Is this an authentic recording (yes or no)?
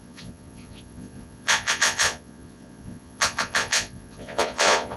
no